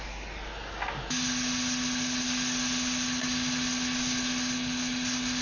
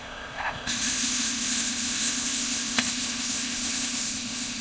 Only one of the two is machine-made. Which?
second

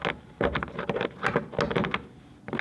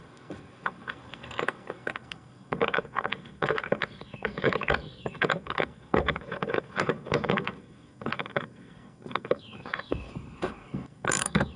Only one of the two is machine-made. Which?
second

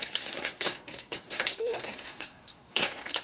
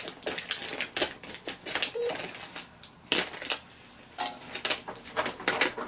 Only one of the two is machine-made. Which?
first